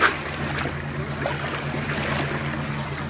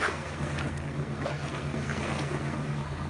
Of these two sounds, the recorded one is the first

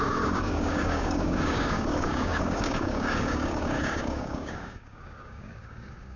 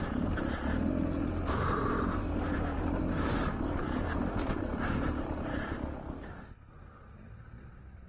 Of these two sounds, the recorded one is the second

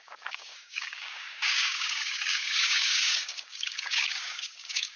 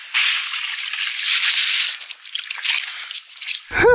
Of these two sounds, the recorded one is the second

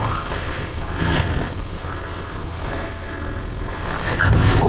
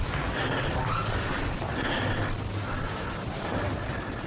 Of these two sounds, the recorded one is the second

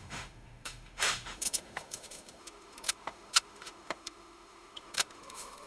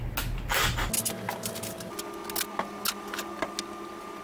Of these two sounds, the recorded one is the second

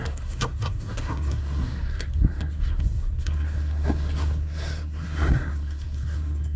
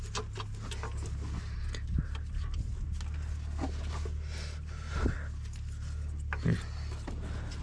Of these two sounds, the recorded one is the second